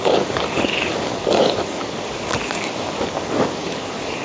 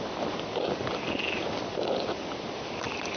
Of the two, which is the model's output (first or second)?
first